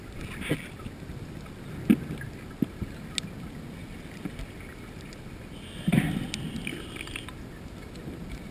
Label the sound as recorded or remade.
recorded